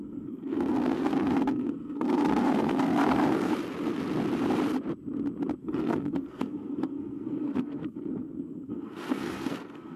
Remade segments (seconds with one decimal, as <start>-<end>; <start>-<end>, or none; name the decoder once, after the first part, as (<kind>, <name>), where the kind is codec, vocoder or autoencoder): 0.0-3.5 (codec, SNAC); 5.6-10.0